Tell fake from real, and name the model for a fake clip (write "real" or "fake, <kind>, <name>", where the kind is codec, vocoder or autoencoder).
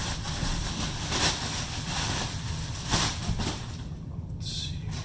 fake, vocoder, BigVGAN v2